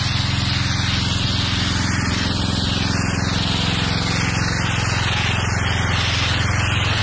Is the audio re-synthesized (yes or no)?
no